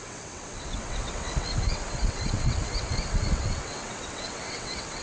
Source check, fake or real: fake